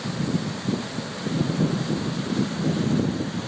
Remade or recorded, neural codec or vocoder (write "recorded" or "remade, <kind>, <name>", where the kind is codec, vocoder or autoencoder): recorded